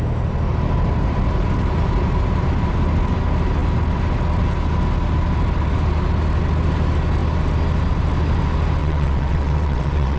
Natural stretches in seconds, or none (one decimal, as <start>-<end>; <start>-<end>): 0.0-8.8